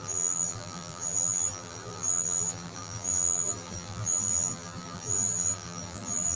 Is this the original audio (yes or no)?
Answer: no